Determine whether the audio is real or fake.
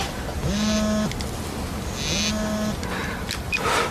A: real